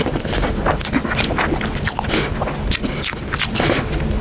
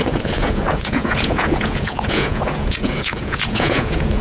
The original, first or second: first